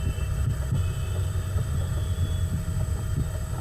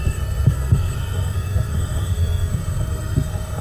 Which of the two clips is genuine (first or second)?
first